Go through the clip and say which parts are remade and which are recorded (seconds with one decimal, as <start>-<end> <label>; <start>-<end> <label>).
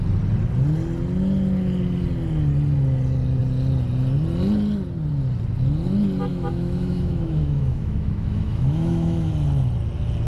0.0-6.3 recorded; 6.3-9.3 remade; 9.3-10.3 recorded